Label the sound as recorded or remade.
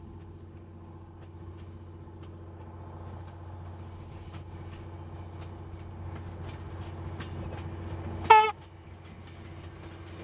recorded